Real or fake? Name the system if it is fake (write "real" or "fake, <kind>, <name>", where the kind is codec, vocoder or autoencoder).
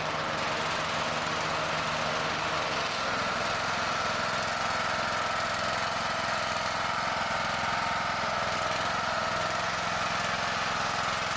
real